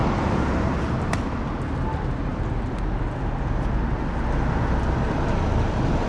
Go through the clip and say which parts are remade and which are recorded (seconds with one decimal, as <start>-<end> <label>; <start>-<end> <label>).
0.0-6.1 recorded